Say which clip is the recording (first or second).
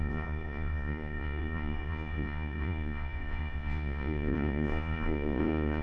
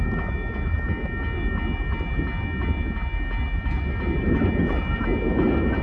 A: second